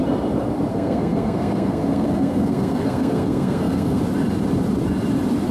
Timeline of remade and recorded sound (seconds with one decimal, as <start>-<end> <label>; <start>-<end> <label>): 0.0-0.7 recorded; 0.7-4.0 remade; 4.0-5.5 recorded